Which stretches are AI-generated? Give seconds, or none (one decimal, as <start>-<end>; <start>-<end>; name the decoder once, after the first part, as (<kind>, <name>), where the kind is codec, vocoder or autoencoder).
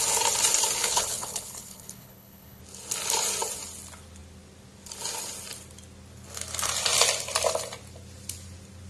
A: 0.8-2.6 (codec, HILCodec)